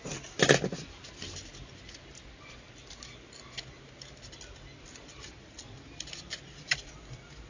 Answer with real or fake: real